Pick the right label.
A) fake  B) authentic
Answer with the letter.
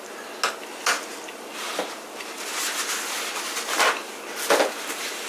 B